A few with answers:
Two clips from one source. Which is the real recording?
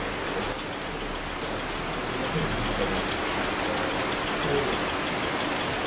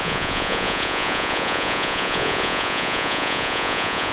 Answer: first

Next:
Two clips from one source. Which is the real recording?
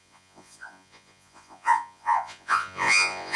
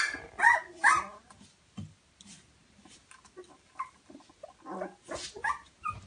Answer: second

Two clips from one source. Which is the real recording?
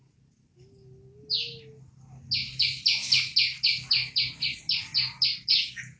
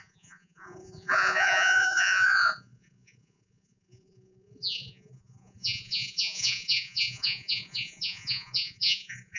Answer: first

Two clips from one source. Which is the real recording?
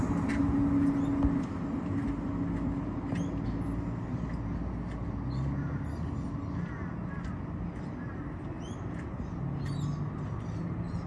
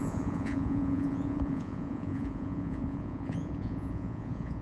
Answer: first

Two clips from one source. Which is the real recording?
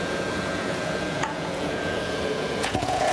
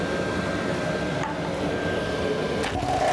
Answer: second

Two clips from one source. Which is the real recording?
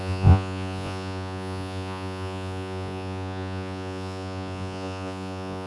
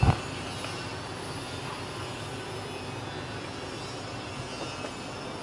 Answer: second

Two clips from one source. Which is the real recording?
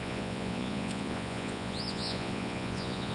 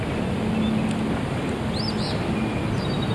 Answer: second